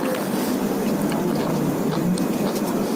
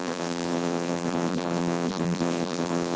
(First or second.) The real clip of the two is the first